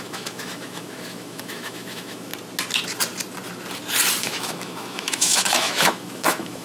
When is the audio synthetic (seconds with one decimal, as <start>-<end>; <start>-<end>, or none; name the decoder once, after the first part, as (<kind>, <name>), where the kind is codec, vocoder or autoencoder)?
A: 0.0-2.3 (autoencoder, DAC-VAE); 4.2-6.6